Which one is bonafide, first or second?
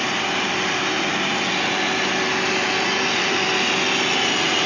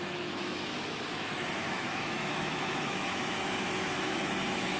first